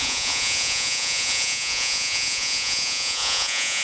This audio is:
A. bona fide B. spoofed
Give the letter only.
B